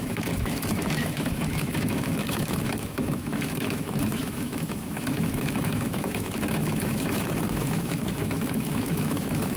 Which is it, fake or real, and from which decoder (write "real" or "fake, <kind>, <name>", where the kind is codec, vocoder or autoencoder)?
fake, autoencoder, DAC-VAE